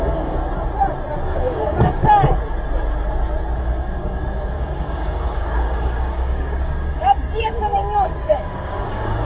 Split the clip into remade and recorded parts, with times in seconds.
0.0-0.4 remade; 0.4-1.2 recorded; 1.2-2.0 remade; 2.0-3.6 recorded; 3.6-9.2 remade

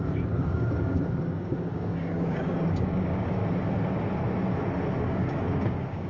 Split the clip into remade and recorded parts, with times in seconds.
0.0-3.4 remade; 3.4-5.0 recorded; 5.0-6.1 remade

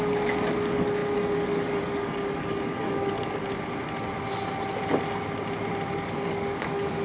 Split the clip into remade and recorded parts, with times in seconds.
0.0-3.4 remade; 3.4-5.9 recorded; 5.9-7.0 remade

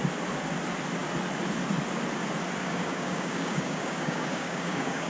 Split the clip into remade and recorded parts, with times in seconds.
0.0-2.6 recorded; 2.6-5.1 remade

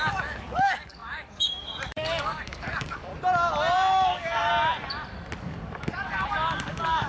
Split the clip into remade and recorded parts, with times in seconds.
0.0-3.1 remade; 3.1-3.9 recorded; 3.9-4.5 remade; 4.5-5.4 recorded; 5.4-7.1 remade

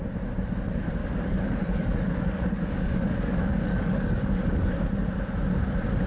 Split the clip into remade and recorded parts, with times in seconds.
0.0-1.0 recorded; 1.0-4.7 remade; 4.7-6.1 recorded